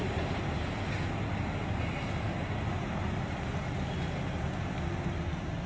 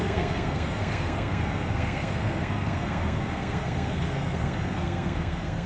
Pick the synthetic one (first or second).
second